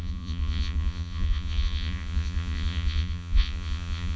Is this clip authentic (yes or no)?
no